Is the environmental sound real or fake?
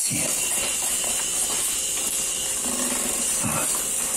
real